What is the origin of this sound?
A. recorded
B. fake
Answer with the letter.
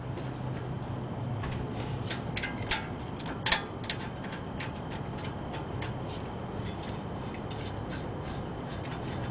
A